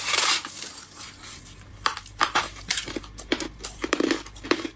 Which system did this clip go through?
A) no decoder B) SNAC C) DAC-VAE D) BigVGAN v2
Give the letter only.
D